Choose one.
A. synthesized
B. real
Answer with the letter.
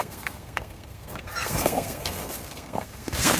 A